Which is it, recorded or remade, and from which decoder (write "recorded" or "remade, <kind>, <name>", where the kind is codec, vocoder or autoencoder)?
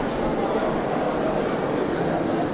recorded